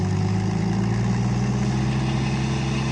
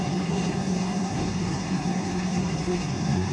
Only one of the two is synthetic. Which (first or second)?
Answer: second